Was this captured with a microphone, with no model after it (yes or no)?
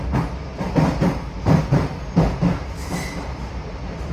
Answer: yes